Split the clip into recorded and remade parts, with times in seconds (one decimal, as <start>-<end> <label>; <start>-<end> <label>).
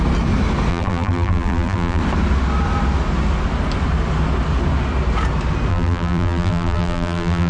0.0-0.7 recorded; 0.7-2.0 remade; 2.0-5.7 recorded; 5.7-7.5 remade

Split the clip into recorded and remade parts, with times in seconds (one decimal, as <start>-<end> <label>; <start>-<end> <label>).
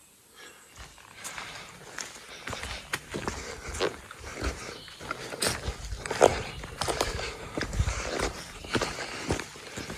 0.0-4.3 recorded; 4.3-5.0 remade; 5.0-6.3 recorded; 6.3-9.3 remade; 9.3-10.0 recorded